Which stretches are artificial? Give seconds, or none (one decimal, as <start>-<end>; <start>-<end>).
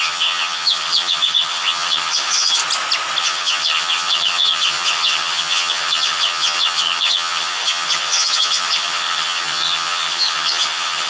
0.0-2.6; 3.2-11.1